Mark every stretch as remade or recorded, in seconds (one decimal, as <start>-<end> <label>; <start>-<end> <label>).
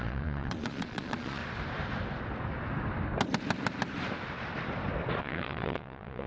0.0-1.4 remade; 1.4-5.2 recorded; 5.2-6.3 remade